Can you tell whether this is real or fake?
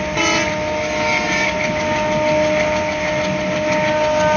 real